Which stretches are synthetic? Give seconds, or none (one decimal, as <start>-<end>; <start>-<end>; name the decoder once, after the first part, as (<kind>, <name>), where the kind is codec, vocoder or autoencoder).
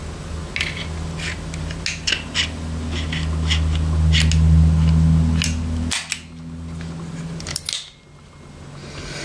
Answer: none